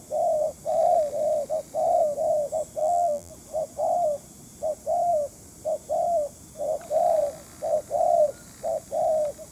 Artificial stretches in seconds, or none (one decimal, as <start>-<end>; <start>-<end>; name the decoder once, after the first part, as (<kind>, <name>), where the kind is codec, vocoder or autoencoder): 2.8-3.3 (vocoder, BigVGAN v2)